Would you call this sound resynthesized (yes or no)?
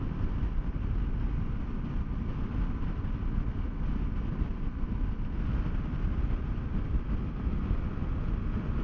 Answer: no